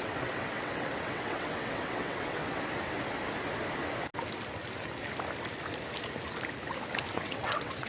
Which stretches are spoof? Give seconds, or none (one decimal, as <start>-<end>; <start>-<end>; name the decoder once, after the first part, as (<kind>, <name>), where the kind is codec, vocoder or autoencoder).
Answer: 0.0-2.4 (vocoder, WaveNeXt); 7.1-7.9